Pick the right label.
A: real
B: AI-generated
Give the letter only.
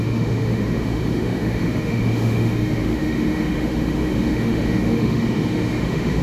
B